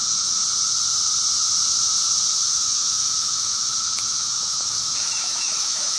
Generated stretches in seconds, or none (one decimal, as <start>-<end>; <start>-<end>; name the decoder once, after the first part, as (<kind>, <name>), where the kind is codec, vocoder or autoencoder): 0.0-0.4 (autoencoder, DAC-VAE); 2.3-6.0